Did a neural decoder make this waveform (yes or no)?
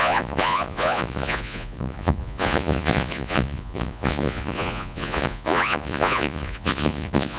yes